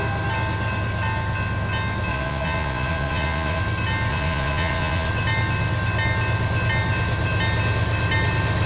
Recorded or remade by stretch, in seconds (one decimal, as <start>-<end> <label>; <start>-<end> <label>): 0.0-2.1 recorded; 2.1-3.6 remade; 3.6-4.1 recorded; 4.1-5.1 remade; 5.1-8.7 recorded

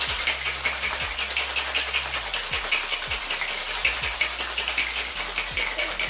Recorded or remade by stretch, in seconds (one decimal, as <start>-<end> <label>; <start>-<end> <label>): 0.0-6.1 recorded

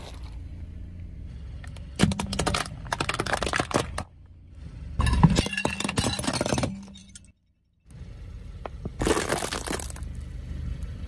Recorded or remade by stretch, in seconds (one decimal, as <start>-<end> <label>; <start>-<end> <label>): 0.0-11.1 recorded

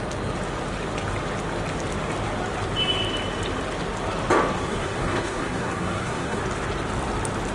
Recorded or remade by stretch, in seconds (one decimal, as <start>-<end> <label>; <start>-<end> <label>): 0.0-4.5 recorded; 4.5-6.4 remade; 6.4-7.5 recorded

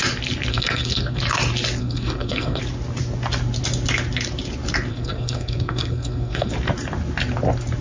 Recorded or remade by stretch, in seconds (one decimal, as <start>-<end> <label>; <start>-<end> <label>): 0.0-0.5 recorded; 0.5-1.2 remade; 1.2-1.8 recorded; 1.8-2.6 remade; 2.6-4.9 recorded; 4.9-6.5 remade; 6.5-7.8 recorded

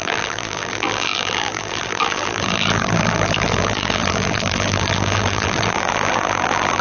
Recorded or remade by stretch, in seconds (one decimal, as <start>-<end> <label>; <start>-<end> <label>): 0.0-6.8 remade